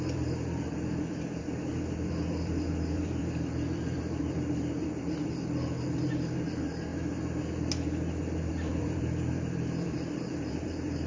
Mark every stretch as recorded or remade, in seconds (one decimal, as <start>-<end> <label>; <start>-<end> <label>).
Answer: 0.0-6.9 remade; 6.9-8.5 recorded; 8.5-11.1 remade